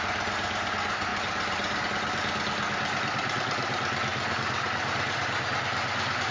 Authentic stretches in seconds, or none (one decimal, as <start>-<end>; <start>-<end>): 0.0-1.1; 1.8-4.1; 5.6-6.3

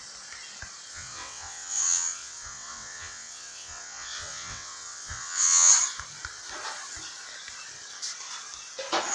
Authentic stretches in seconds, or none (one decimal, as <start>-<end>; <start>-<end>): 0.0-0.9; 5.7-9.1

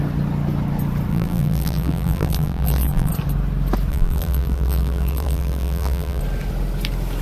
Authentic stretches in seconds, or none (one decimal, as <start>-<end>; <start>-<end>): 0.0-1.1; 3.1-3.9; 6.2-7.2

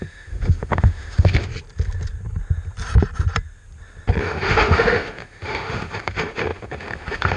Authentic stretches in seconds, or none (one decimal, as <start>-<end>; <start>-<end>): 1.5-4.2

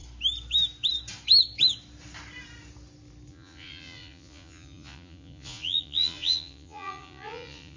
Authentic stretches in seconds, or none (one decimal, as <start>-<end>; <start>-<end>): 0.0-3.3

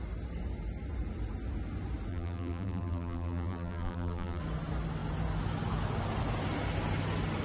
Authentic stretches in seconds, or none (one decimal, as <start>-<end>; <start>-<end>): 0.0-2.1; 4.4-7.4

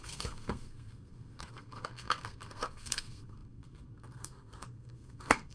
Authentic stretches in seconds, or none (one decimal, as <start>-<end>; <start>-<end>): none